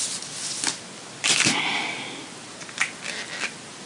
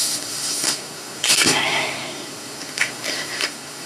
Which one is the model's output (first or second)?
second